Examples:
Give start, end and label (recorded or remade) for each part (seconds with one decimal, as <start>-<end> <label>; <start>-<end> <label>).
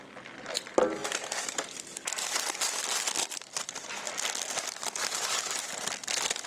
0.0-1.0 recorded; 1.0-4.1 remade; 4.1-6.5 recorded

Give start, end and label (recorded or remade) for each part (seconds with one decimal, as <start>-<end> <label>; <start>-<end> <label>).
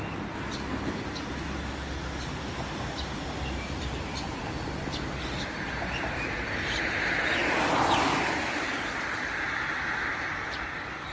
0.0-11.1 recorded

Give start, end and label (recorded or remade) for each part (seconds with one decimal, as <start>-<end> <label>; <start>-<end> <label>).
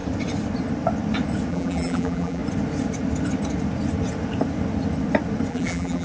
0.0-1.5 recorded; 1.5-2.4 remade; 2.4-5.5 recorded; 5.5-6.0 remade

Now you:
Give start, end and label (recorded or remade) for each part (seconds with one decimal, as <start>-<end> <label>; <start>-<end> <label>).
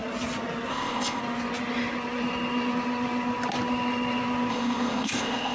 0.0-0.7 recorded; 0.7-1.2 remade; 1.2-4.5 recorded; 4.5-5.5 remade